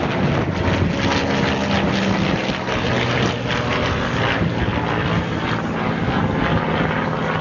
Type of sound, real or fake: real